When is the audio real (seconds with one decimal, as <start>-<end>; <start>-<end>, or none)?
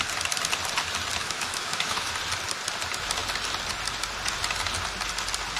0.0-1.2; 2.1-5.6